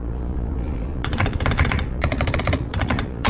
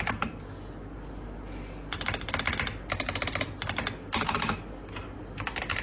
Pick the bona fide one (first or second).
second